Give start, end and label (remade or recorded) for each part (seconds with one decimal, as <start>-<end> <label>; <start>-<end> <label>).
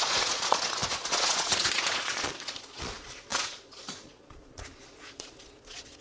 0.0-6.0 remade